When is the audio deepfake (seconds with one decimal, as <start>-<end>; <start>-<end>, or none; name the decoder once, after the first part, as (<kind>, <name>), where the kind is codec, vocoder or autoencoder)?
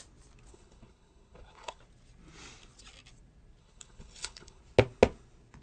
0.5-1.8 (codec, HILCodec); 3.6-4.6